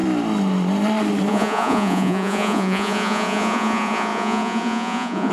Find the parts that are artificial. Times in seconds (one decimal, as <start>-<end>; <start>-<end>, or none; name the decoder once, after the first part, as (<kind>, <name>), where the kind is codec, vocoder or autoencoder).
1.3-5.3 (vocoder, Vocos)